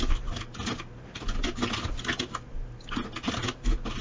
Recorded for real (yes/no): yes